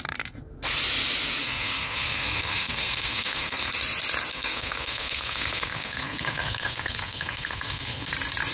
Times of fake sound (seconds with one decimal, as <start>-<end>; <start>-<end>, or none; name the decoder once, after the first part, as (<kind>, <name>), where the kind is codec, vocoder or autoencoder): 1.4-3.7 (codec, SNAC); 4.3-8.1